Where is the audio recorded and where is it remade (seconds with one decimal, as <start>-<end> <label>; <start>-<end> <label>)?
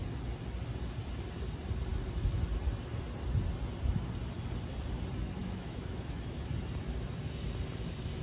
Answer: 0.0-5.4 recorded; 5.4-6.5 remade; 6.5-8.2 recorded